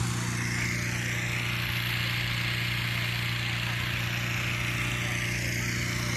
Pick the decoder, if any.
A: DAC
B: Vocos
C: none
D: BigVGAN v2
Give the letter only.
C